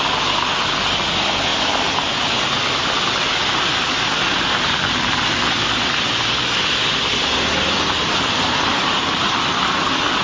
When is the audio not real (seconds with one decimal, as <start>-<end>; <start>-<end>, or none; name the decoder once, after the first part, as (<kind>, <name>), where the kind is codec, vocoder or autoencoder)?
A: none